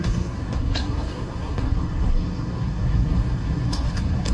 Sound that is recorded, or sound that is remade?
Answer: remade